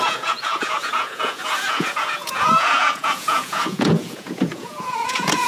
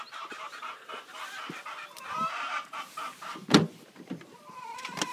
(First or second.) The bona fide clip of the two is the second